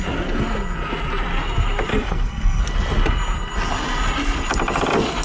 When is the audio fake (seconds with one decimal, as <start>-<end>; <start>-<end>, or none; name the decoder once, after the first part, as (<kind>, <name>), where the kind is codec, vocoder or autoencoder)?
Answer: 1.9-2.6 (codec, SNAC)